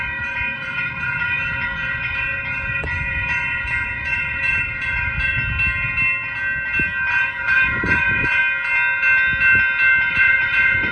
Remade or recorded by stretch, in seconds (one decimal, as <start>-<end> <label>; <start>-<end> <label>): 0.0-5.4 remade; 5.4-7.1 recorded; 7.1-8.4 remade; 8.4-10.1 recorded; 10.1-10.9 remade